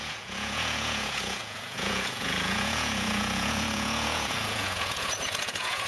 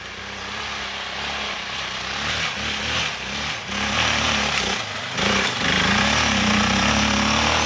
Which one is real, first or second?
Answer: second